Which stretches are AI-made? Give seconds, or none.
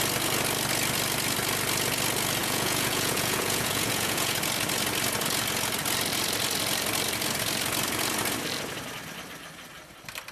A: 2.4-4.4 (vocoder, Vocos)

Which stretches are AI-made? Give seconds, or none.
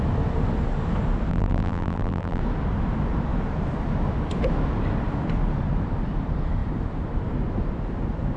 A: 1.3-2.4 (vocoder, BigVGAN v2)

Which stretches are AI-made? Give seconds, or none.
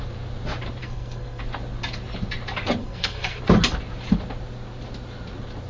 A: 0.8-1.4 (codec, SNAC); 2.8-3.4